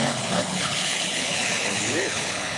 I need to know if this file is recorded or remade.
remade